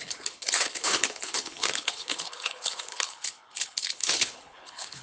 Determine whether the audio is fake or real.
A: fake